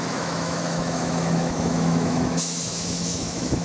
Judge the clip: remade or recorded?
remade